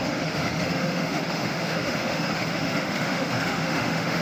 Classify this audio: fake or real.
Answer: fake